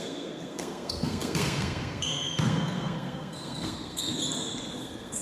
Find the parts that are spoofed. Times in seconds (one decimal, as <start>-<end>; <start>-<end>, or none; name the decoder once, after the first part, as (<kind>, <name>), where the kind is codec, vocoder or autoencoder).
0.0-4.2 (codec, SNAC); 4.8-5.2